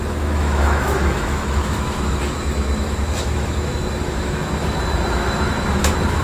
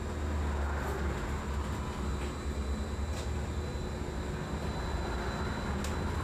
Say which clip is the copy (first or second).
first